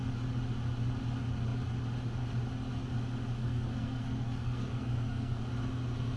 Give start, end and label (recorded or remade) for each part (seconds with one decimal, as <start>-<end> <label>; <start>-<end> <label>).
0.0-3.4 recorded; 3.4-5.4 remade; 5.4-6.2 recorded